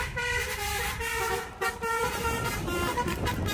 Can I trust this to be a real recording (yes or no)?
no